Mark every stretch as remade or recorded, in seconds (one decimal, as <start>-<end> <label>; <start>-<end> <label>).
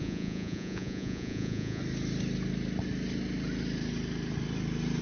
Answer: 0.0-1.8 remade; 1.8-5.0 recorded